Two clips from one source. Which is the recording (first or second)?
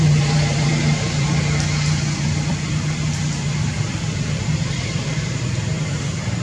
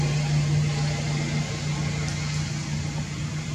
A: second